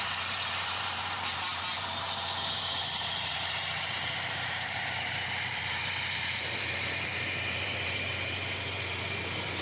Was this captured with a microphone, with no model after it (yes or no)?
no